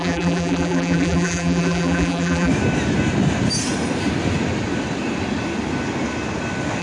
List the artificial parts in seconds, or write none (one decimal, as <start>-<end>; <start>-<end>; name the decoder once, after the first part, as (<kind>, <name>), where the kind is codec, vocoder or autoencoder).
0.0-2.5 (vocoder, BigVGAN v2)